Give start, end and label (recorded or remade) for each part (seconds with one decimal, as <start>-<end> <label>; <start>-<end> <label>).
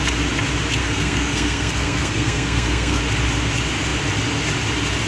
0.0-0.8 recorded; 0.8-3.0 remade; 3.0-5.1 recorded